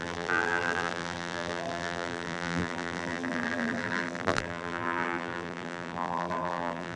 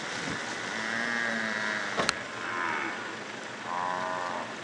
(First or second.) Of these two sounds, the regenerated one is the first